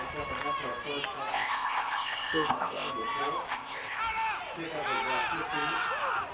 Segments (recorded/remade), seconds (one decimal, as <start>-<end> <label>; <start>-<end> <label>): 0.0-1.3 recorded; 1.3-2.9 remade; 2.9-3.5 recorded; 3.5-4.0 remade; 4.0-6.3 recorded